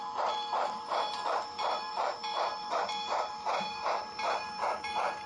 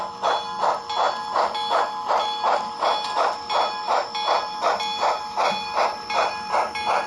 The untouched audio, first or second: second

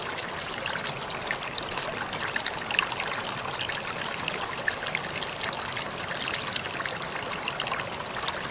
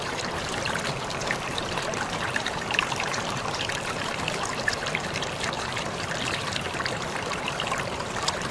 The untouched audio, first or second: first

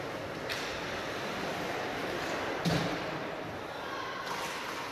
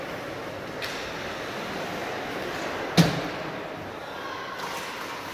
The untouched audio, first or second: second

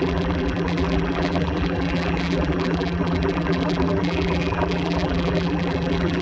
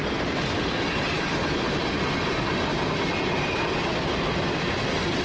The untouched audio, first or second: second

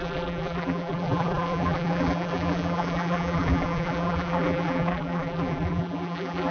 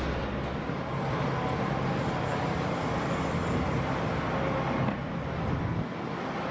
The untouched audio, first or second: second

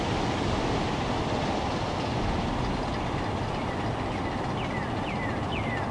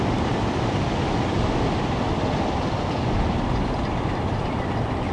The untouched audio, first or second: first